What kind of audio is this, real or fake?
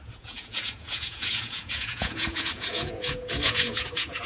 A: fake